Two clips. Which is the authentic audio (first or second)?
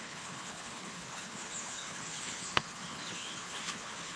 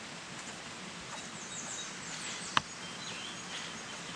second